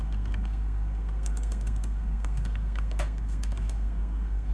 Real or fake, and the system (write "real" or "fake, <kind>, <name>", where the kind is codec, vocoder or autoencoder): fake, codec, SNAC